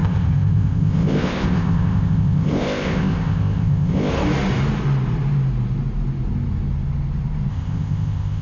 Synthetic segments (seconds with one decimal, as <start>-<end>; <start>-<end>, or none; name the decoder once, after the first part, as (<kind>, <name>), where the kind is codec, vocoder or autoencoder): 0.0-4.1 (codec, ZipCodec); 7.5-8.4